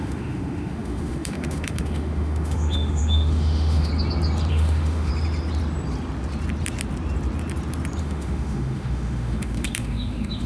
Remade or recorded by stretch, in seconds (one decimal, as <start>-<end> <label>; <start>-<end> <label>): 0.0-3.9 remade; 3.9-4.5 recorded; 4.5-5.1 remade; 5.1-8.0 recorded; 8.0-10.5 remade